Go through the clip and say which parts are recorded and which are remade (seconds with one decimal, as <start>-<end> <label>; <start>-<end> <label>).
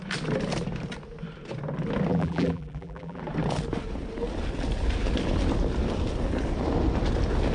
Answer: 0.0-2.1 recorded; 2.1-3.2 remade; 3.2-7.5 recorded